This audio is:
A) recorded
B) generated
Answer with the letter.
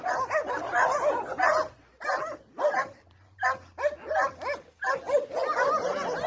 A